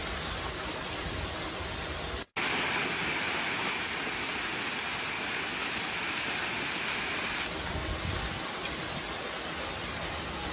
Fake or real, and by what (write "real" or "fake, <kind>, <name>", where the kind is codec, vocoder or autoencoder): real